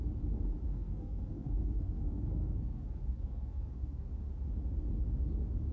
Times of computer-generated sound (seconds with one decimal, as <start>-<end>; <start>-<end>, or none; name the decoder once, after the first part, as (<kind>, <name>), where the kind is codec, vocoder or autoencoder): 0.7-4.1 (codec, SNAC)

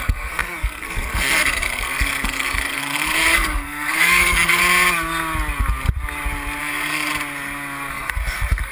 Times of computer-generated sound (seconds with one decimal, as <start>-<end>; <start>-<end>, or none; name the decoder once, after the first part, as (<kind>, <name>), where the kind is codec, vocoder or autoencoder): 0.0-4.6 (codec, SNAC); 6.6-7.1; 7.9-8.7

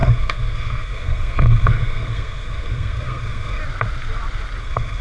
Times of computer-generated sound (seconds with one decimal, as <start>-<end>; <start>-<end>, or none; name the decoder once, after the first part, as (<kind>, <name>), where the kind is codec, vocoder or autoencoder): 0.0-3.6 (codec, SNAC); 4.6-5.0

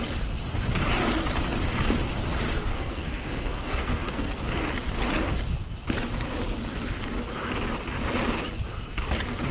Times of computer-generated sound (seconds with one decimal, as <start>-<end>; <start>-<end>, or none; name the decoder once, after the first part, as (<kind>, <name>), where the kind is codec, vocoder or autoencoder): 2.7-4.4 (codec, SNAC)

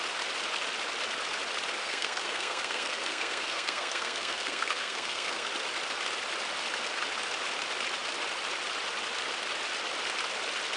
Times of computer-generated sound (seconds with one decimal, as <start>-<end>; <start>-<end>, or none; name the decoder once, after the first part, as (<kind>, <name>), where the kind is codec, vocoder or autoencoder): 1.8-5.5 (codec, SNAC)

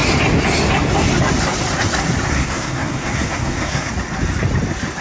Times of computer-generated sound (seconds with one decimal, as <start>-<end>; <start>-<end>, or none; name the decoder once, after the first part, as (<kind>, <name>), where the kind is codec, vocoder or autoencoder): 2.3-3.9 (codec, SNAC)

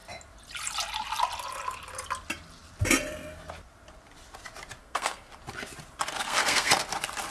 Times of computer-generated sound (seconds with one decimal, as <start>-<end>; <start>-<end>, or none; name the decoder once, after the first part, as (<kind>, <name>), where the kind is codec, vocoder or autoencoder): 4.8-5.3 (codec, SNAC); 6.2-6.7